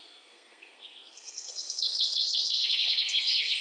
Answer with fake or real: fake